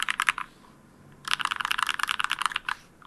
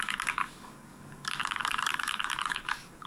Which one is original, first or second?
first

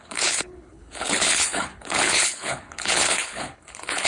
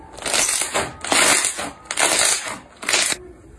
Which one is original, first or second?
second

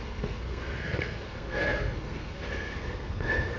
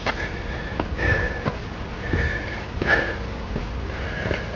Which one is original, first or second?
second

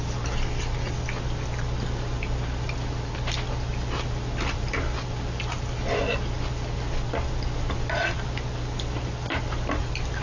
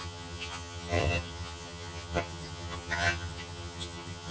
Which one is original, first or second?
first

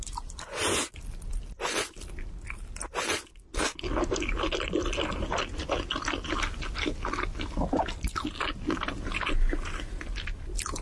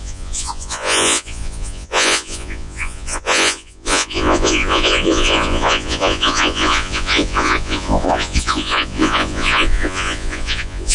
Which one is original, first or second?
first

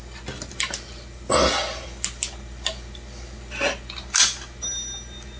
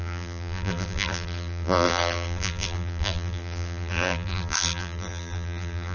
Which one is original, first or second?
first